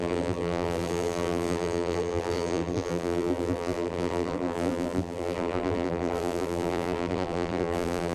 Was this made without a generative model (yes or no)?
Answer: no